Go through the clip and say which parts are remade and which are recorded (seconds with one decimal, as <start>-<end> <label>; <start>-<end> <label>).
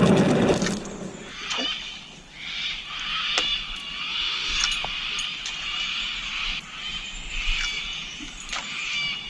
0.0-4.1 recorded; 4.1-4.6 remade; 4.6-9.3 recorded